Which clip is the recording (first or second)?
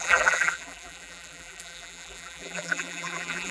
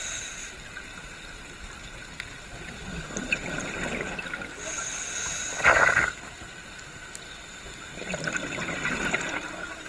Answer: second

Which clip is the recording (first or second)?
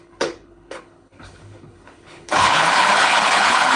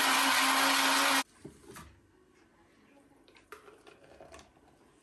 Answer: second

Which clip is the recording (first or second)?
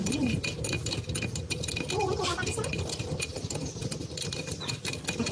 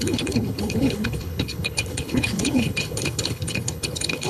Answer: first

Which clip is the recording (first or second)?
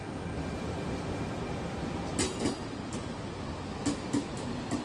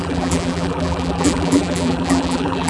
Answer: first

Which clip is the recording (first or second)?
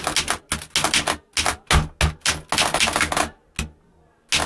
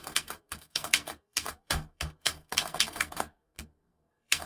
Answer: first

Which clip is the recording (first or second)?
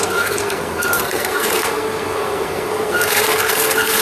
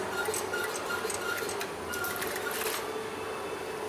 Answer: second